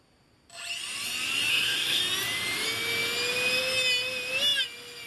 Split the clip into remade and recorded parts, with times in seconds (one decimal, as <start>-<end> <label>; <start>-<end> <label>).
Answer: 0.0-1.5 recorded; 1.5-2.0 remade; 2.0-5.1 recorded